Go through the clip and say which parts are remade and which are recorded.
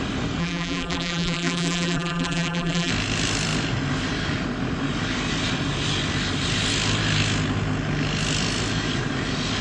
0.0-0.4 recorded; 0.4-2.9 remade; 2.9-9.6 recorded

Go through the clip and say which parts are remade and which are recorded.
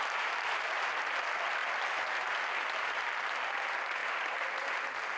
0.0-5.2 recorded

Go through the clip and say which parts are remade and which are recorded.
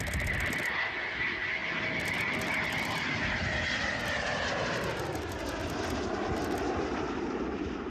0.0-7.9 recorded